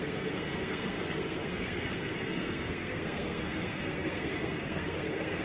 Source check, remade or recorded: remade